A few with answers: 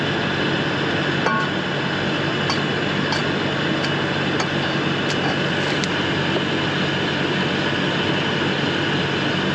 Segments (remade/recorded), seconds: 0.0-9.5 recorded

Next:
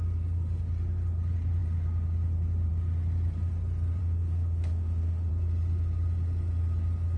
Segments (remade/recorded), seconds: 0.0-4.0 recorded; 4.0-5.3 remade; 5.3-7.2 recorded

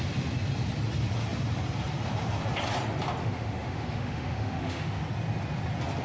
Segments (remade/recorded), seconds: 0.0-3.2 recorded; 3.2-5.0 remade; 5.0-6.0 recorded

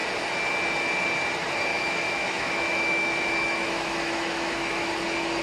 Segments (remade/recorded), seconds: 0.0-1.7 recorded; 1.7-4.9 remade; 4.9-5.4 recorded

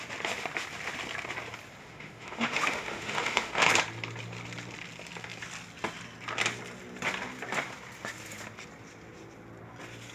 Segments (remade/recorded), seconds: 0.0-1.8 recorded; 1.8-3.7 remade; 3.7-10.1 recorded

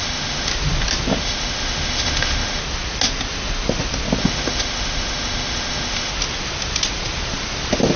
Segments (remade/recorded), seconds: 0.0-0.5 remade; 0.5-1.2 recorded; 1.2-2.6 remade; 2.6-4.2 recorded; 4.2-6.1 remade; 6.1-8.0 recorded